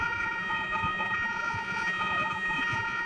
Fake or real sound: fake